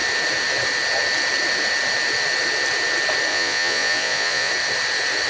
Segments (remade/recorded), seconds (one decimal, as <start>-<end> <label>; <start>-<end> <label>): 0.0-3.3 recorded; 3.3-4.5 remade; 4.5-5.3 recorded